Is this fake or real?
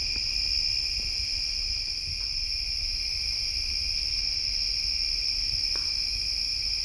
real